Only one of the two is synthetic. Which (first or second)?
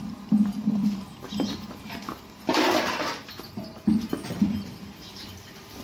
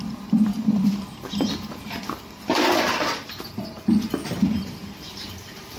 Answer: second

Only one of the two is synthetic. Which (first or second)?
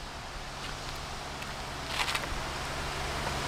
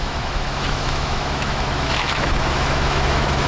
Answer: second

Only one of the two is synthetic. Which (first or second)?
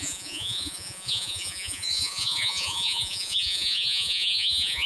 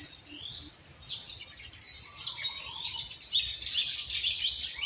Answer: first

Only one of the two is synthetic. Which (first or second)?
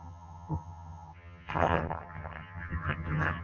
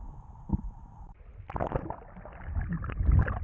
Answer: first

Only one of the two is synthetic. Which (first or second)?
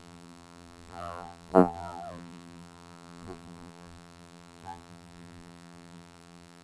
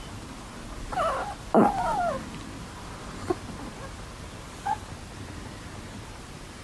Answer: first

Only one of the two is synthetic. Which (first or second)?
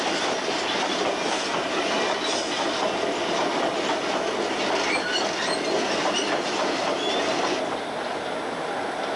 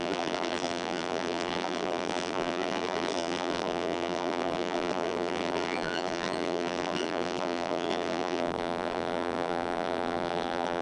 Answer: second